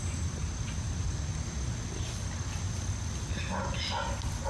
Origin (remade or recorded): recorded